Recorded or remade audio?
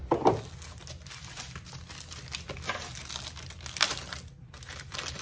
recorded